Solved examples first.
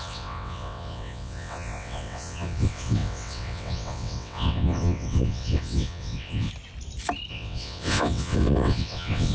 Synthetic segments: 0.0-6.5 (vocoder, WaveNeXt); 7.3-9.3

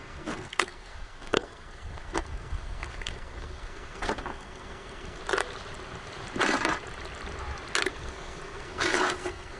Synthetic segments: 0.0-5.2 (codec, SNAC); 7.9-9.6

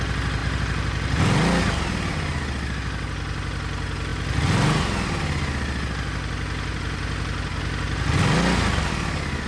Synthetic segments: 0.4-1.2 (vocoder, BigVGAN v2)

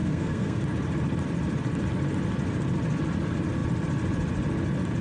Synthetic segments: 0.0-0.6 (codec, SNAC)

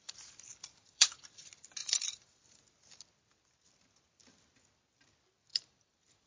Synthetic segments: 0.5-1.2 (vocoder, BigVGAN v2); 1.8-2.6; 5.5-6.3

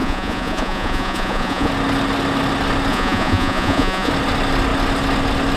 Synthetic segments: 0.0-1.7 (vocoder, Vocos); 2.9-4.1

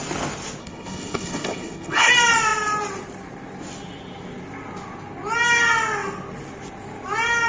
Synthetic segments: 0.6-2.1 (codec, HILCodec)

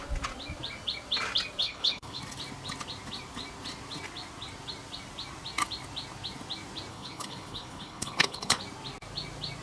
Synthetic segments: 1.6-2.2 (codec, HILCodec); 6.9-8.6